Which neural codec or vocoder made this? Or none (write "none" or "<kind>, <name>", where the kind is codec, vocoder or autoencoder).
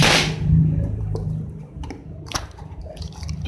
vocoder, BigVGAN v2